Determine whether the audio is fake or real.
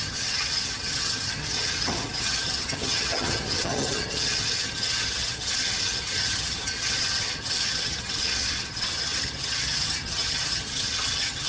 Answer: fake